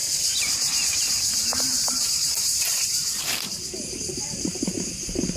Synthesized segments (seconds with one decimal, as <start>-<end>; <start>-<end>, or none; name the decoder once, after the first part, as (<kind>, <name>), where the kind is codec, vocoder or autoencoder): 0.0-3.2 (vocoder, BigVGAN v2)